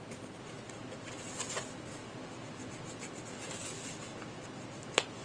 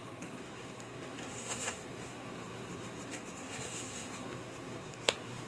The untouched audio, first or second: first